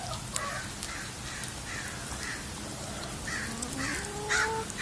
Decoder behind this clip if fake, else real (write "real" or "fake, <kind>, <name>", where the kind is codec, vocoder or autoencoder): real